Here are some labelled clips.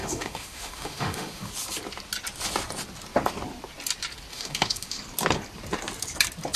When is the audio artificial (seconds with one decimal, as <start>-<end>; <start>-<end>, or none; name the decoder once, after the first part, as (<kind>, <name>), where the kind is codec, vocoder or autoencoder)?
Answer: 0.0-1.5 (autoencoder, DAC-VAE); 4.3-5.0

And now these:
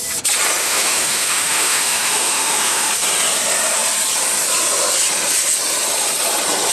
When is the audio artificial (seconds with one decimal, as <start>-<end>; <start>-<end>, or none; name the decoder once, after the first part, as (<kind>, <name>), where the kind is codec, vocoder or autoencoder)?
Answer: 0.6-2.9 (autoencoder, DAC-VAE)

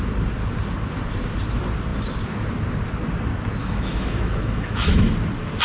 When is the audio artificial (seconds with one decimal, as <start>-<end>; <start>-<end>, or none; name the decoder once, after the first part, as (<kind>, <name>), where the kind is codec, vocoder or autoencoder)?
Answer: 3.6-5.1 (autoencoder, DAC-VAE)

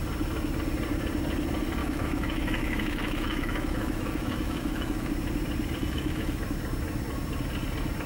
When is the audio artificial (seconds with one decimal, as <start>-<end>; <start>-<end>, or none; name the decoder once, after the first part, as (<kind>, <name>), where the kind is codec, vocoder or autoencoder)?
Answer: 1.8-5.1 (autoencoder, DAC-VAE); 5.8-6.4

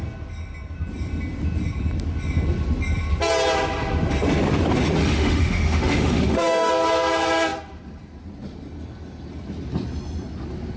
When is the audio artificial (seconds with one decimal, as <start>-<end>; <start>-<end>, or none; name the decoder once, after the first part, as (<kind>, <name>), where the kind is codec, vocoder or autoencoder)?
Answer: 5.0-6.7 (autoencoder, DAC-VAE)

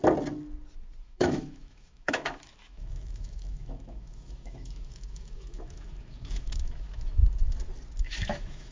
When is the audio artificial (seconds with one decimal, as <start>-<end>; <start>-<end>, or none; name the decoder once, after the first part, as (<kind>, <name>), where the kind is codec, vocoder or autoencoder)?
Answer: 1.0-7.2 (autoencoder, DAC-VAE); 8.0-8.7

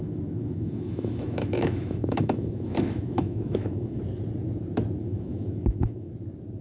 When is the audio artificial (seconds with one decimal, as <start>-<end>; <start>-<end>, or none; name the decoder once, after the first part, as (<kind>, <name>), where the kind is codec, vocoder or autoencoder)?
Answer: 0.0-4.0 (autoencoder, DAC-VAE); 5.0-6.1

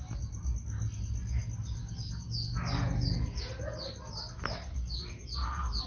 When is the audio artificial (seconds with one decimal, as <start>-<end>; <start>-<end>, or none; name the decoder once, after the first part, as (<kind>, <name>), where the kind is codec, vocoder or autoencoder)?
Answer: none